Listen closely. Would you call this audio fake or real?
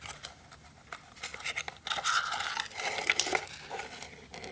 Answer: real